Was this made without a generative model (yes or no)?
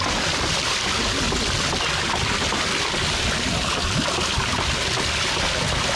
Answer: yes